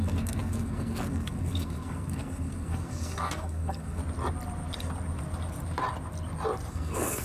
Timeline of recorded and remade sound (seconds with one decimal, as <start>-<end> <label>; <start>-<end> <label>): 0.0-4.0 remade; 4.0-6.7 recorded; 6.7-7.2 remade